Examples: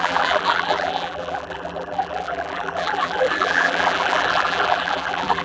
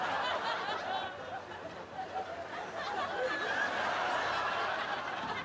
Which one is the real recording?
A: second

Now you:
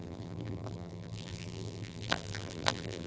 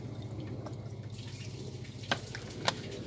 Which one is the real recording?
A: second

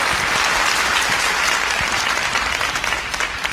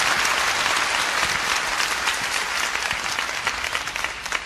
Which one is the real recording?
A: first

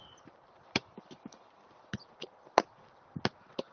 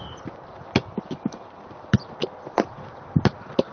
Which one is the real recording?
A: second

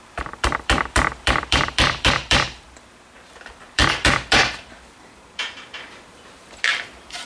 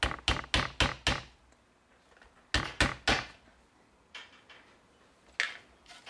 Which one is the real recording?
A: second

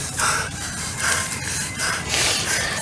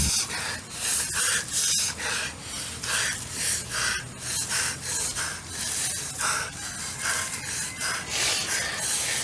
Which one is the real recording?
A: second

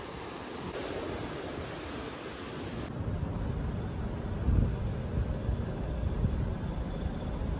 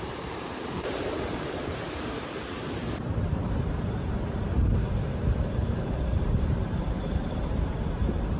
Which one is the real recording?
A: first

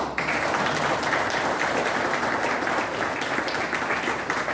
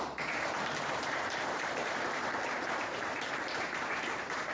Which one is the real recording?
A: first